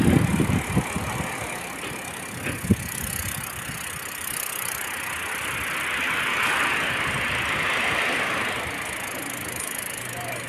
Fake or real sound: real